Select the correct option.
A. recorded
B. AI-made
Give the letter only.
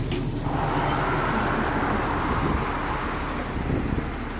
A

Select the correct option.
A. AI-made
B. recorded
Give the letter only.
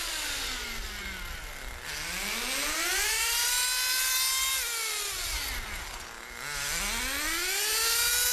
B